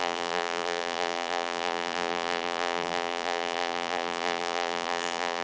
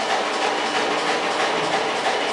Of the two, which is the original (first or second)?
second